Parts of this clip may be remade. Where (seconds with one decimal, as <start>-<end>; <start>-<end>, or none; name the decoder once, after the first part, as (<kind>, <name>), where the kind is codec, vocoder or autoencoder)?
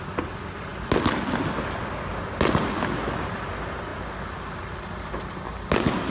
none